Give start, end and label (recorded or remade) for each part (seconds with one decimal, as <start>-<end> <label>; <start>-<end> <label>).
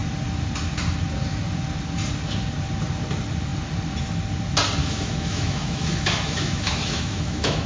0.0-4.8 recorded; 4.8-7.7 remade